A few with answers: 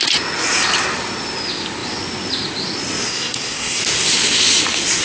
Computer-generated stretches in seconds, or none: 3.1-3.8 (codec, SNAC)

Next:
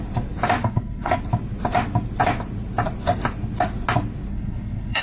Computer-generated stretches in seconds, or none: 0.6-1.2 (codec, SNAC); 4.3-5.0

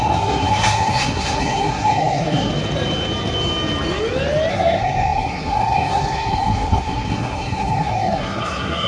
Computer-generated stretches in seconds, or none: 0.0-2.5 (codec, SNAC); 4.5-8.9

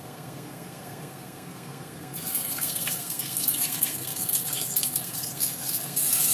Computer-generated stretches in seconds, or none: 0.0-6.3 (codec, SNAC)

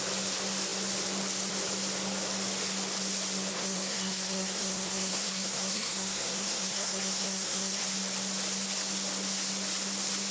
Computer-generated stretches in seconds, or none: 3.5-7.8 (codec, SNAC)

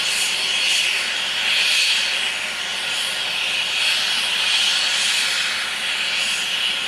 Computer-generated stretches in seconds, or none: none

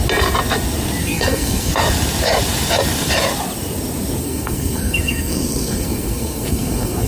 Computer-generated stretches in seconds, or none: 1.0-1.7 (codec, SNAC); 4.2-7.1